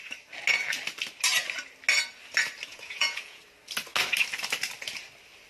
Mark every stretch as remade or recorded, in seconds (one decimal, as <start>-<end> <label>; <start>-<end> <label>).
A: 0.0-2.7 recorded; 2.7-3.4 remade; 3.4-5.5 recorded